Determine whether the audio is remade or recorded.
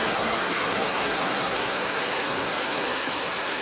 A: remade